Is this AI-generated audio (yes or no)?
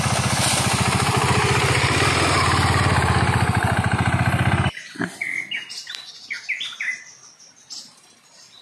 no